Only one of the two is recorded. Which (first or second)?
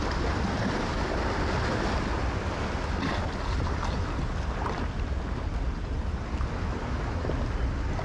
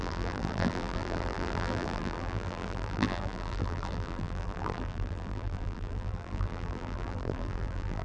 first